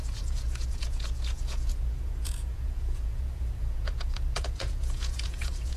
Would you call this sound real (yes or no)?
no